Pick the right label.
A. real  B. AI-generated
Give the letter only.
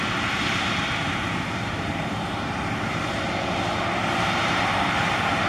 B